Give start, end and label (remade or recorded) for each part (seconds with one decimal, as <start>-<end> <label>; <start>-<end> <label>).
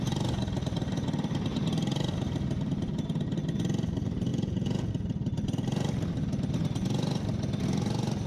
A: 0.0-4.3 recorded; 4.3-4.9 remade; 4.9-8.3 recorded